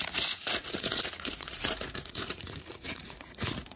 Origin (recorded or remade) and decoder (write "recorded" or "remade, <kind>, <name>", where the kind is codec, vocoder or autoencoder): remade, vocoder, Vocos